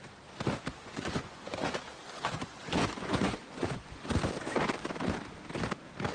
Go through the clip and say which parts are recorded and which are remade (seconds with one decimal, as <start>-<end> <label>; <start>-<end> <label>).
0.0-0.7 recorded; 0.7-4.1 remade; 4.1-6.1 recorded